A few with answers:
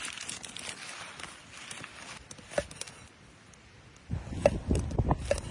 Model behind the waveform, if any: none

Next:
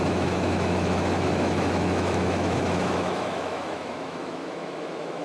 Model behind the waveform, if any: autoencoder, DAC-VAE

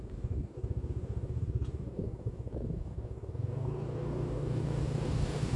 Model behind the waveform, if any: codec, DAC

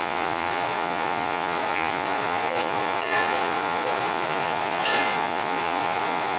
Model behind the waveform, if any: vocoder, Vocos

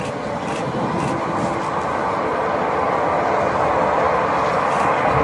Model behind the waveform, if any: none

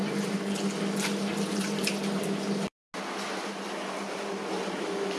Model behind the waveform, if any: none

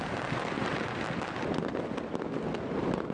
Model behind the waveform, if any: none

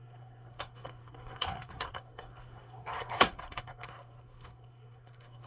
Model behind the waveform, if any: codec, SNAC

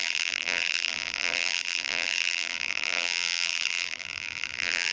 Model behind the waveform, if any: vocoder, BigVGAN v2